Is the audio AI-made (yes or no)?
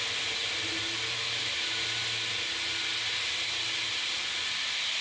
no